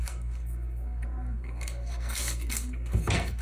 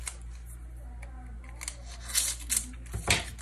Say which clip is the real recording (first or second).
second